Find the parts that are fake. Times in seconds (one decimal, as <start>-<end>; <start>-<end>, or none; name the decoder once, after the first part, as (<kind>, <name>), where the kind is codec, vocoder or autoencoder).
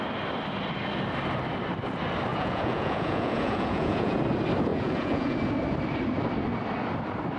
2.3-4.2 (vocoder, Vocos); 4.7-5.4